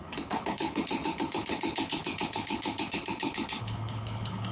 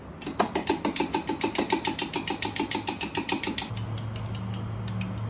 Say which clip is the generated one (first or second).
first